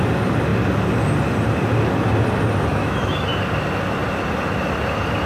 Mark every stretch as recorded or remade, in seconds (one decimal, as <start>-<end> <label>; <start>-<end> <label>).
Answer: 0.0-2.7 recorded; 2.7-3.3 remade; 3.3-5.3 recorded